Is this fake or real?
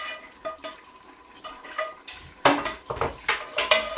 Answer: real